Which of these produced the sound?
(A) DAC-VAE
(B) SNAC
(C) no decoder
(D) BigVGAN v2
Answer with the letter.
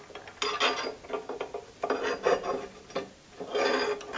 C